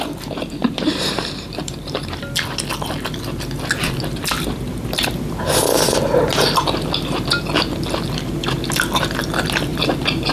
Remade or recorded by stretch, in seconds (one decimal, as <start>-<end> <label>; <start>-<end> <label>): 0.0-0.6 recorded; 0.6-2.2 remade; 2.2-9.7 recorded; 9.7-10.3 remade